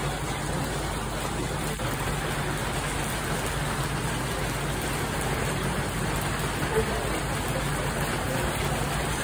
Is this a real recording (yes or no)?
yes